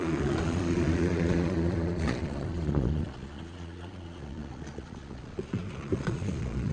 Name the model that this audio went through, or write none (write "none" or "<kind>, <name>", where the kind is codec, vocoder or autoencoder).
vocoder, Vocos